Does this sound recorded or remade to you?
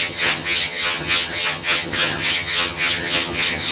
remade